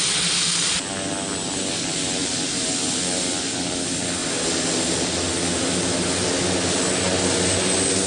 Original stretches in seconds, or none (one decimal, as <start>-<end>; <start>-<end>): 0.0-8.1